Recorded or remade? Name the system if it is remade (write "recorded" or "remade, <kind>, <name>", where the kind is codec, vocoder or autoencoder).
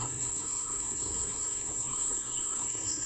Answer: remade, codec, SNAC